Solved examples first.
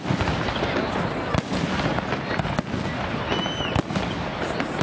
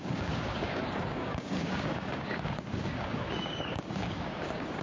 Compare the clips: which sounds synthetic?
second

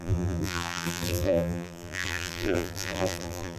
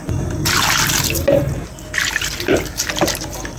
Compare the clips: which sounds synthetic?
first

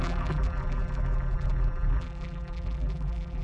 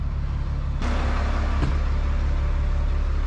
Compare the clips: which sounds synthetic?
first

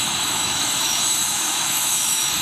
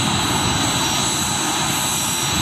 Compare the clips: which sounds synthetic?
first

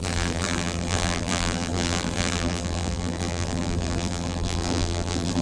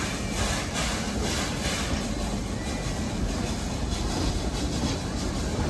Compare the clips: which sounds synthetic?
first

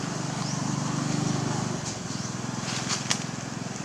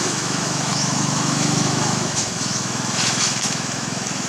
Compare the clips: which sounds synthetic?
second